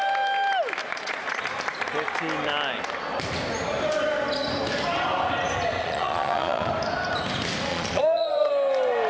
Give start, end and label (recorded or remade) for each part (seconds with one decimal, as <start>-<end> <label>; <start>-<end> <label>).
0.0-0.8 recorded; 0.8-1.4 remade; 1.4-5.8 recorded; 5.8-6.7 remade; 6.7-7.7 recorded; 7.7-8.5 remade; 8.5-9.1 recorded